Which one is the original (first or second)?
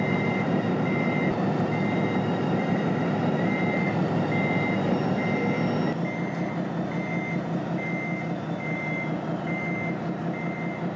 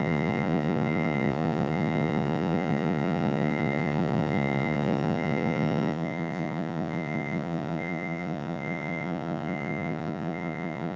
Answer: first